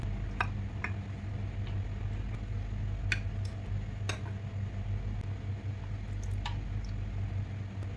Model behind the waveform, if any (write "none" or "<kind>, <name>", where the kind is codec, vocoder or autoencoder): none